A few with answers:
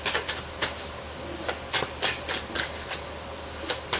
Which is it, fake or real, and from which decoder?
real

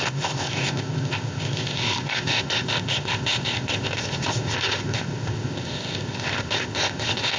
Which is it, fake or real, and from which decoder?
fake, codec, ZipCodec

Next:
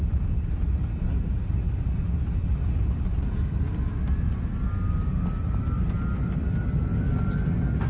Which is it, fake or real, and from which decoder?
real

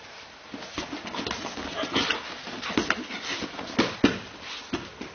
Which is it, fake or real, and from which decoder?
real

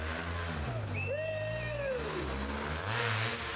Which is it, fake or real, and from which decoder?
real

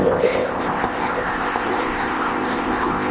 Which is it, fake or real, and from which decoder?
fake, codec, ZipCodec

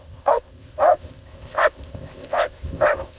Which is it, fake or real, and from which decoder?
fake, codec, ZipCodec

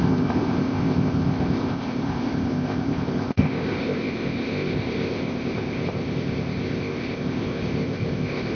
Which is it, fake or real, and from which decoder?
fake, codec, ZipCodec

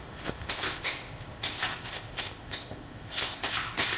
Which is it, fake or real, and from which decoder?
fake, codec, ZipCodec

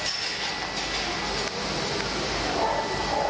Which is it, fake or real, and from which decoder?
real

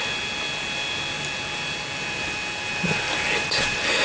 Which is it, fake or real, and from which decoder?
real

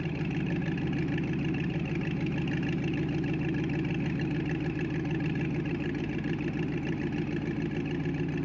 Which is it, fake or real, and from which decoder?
real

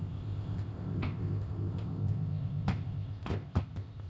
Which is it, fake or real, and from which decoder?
fake, codec, ZipCodec